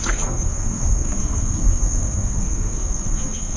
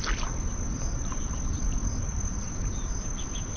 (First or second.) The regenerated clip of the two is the first